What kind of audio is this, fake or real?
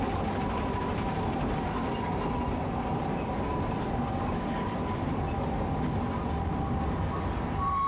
real